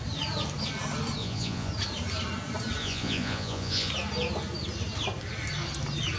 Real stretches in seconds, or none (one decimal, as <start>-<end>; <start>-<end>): 0.0-1.2; 1.7-2.8; 3.9-6.2